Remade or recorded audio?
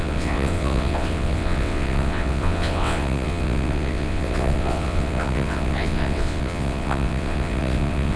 remade